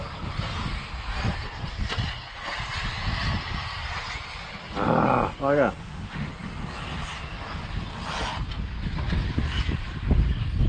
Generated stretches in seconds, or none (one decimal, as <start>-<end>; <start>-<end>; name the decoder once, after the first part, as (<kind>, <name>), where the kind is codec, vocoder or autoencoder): 5.8-6.3 (autoencoder, DAC-VAE)